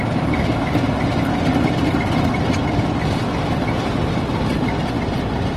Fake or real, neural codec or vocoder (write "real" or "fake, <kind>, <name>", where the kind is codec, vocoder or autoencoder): fake, vocoder, BigVGAN v2